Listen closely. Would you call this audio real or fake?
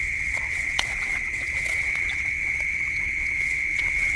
fake